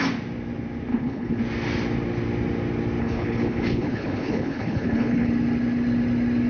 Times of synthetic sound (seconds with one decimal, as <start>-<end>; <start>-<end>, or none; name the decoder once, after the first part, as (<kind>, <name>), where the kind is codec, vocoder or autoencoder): 0.9-1.4 (codec, HILCodec); 3.0-5.3